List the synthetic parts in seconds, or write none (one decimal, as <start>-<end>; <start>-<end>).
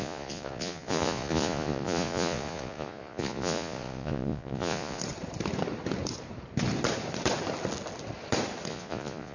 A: 0.0-5.0; 8.7-9.3